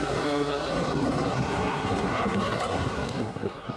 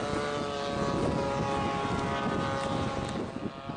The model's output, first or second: first